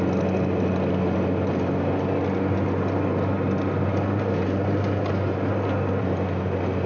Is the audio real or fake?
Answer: real